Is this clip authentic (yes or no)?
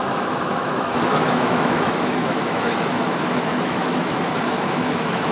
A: no